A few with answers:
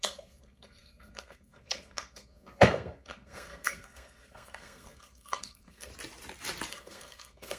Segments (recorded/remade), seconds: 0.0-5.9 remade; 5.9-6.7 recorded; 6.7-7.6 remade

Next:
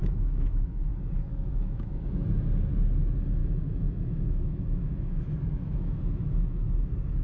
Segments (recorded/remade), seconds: 0.0-0.9 remade; 0.9-1.3 recorded; 1.3-2.0 remade; 2.0-3.4 recorded; 3.4-6.7 remade; 6.7-7.2 recorded

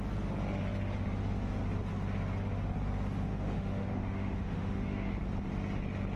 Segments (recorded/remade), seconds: 0.0-3.3 recorded; 3.3-5.1 remade; 5.1-6.2 recorded

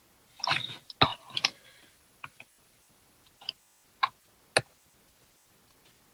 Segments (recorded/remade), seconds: 0.0-1.1 recorded; 1.1-3.2 remade; 3.2-6.1 recorded

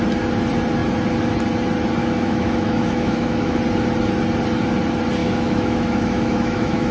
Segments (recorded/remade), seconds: 0.0-2.0 recorded; 2.0-3.6 remade; 3.6-5.2 recorded; 5.2-6.9 remade

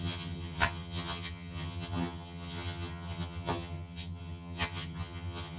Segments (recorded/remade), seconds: 0.0-5.6 remade